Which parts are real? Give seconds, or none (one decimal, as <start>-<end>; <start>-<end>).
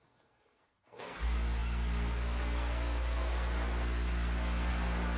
none